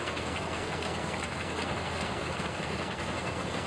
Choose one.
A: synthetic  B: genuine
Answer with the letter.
A